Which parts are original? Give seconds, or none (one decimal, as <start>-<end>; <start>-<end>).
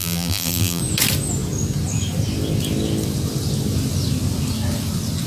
0.8-5.3